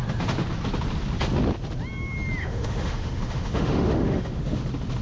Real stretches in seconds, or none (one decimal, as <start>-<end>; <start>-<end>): 0.0-2.4; 4.6-5.0